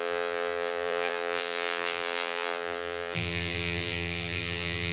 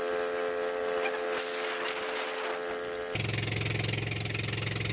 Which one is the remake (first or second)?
first